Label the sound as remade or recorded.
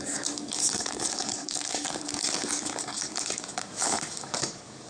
remade